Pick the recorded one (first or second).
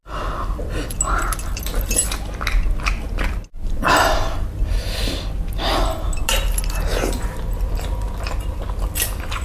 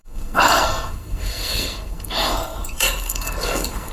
first